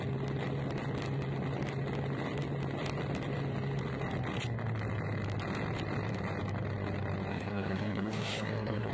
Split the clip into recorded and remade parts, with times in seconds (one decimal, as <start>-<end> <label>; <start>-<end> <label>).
0.0-7.3 recorded; 7.3-8.9 remade